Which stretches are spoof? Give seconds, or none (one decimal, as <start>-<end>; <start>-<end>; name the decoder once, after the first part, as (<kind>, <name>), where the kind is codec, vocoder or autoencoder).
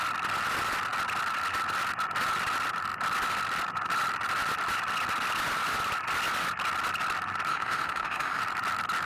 7.5-8.4 (autoencoder, DAC-VAE)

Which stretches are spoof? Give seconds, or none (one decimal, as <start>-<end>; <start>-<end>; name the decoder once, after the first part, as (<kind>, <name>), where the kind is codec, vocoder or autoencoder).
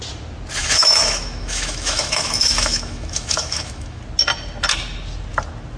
0.6-4.0 (autoencoder, DAC-VAE)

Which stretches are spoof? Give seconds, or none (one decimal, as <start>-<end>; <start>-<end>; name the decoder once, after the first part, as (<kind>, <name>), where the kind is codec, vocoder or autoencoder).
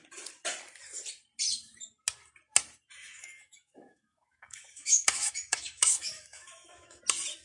3.0-7.0 (autoencoder, DAC-VAE)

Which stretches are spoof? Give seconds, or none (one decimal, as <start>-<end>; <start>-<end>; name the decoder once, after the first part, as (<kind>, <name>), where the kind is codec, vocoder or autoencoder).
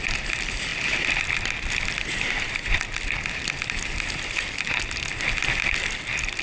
none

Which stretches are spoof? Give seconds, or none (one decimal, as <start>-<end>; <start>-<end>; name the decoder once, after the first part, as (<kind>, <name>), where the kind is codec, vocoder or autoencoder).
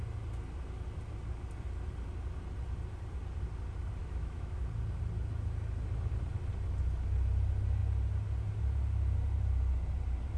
4.0-4.6 (autoencoder, DAC-VAE)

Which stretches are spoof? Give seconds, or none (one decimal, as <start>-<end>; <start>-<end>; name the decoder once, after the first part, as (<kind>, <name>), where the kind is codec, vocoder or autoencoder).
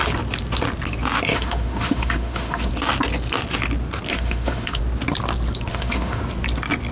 1.3-2.7 (autoencoder, DAC-VAE); 4.1-4.8; 5.7-6.2